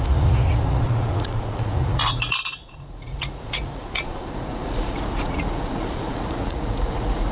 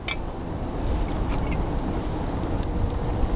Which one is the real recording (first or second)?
second